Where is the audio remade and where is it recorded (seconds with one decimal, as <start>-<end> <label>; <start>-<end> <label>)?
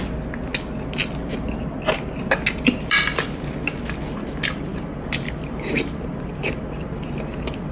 0.0-7.7 recorded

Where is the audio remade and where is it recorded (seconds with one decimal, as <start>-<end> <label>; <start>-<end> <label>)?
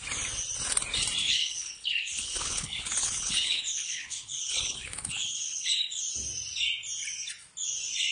0.0-1.2 recorded; 1.2-6.0 remade; 6.0-8.1 recorded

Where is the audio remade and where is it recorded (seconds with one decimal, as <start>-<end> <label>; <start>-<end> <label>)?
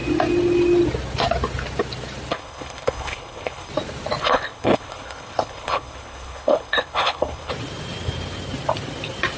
0.0-2.3 recorded; 2.3-3.7 remade; 3.7-4.2 recorded; 4.2-7.5 remade; 7.5-9.4 recorded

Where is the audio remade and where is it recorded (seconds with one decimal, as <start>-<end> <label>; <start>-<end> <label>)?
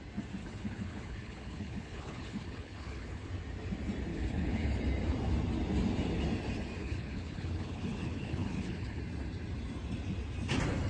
0.0-0.4 recorded; 0.4-3.3 remade; 3.3-4.1 recorded; 4.1-4.8 remade; 4.8-6.8 recorded; 6.8-9.0 remade; 9.0-10.9 recorded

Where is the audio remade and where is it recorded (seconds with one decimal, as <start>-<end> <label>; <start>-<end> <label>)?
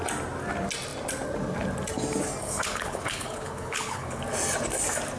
0.0-2.4 recorded; 2.4-4.2 remade; 4.2-5.2 recorded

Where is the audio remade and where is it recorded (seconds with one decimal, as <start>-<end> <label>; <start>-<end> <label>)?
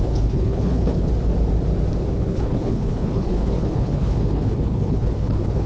0.0-1.1 remade; 1.1-2.1 recorded; 2.1-5.7 remade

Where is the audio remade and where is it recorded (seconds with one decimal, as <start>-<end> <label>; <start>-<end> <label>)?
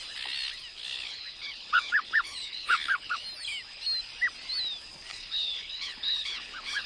0.0-0.7 recorded; 0.7-3.2 remade; 3.2-5.1 recorded; 5.1-6.9 remade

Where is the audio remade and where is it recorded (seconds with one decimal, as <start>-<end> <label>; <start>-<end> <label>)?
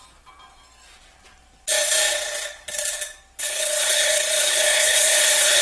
0.0-3.4 recorded; 3.4-5.6 remade